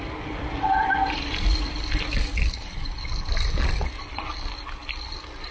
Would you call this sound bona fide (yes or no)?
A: yes